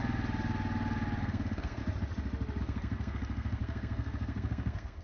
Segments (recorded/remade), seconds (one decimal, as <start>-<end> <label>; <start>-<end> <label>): 0.0-1.2 recorded; 1.2-1.8 remade; 1.8-2.6 recorded; 2.6-5.0 remade